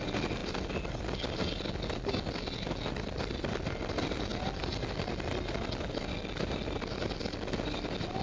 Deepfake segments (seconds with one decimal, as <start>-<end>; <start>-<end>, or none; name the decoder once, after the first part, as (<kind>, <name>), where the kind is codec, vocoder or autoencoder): none